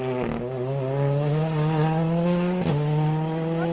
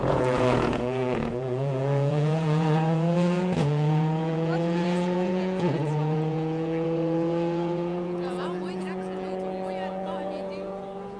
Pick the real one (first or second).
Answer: first